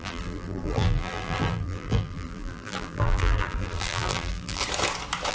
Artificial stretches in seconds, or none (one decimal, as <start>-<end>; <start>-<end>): 0.0-4.6